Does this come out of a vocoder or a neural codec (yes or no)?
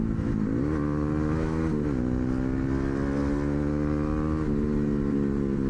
no